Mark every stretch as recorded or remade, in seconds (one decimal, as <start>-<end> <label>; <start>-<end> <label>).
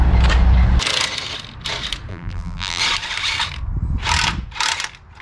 0.0-2.1 recorded; 2.1-2.8 remade; 2.8-5.2 recorded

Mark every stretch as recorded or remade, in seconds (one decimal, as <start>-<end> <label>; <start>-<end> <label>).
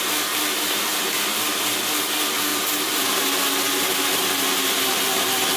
0.0-2.5 recorded; 2.5-4.2 remade; 4.2-5.6 recorded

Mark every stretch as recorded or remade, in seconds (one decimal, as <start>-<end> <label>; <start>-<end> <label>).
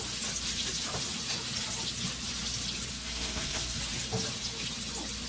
0.0-2.9 recorded; 2.9-3.8 remade; 3.8-5.3 recorded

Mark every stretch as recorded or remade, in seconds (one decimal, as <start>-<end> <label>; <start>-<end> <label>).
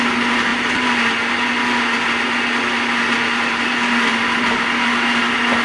0.0-5.6 recorded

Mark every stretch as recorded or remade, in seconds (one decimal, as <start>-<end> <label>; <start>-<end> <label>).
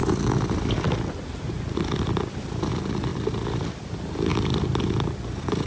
0.0-5.7 recorded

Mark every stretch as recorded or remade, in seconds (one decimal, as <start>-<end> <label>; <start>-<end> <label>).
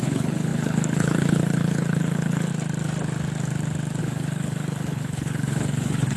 0.0-2.5 remade; 2.5-4.0 recorded; 4.0-6.2 remade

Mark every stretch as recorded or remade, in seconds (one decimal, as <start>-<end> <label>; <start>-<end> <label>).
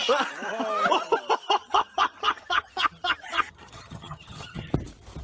0.0-1.6 recorded; 1.6-4.7 remade; 4.7-5.2 recorded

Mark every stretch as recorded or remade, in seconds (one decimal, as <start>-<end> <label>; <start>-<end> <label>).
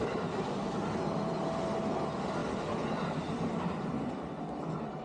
0.0-5.0 recorded